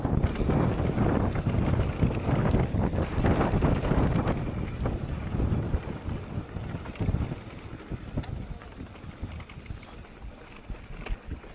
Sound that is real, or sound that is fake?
real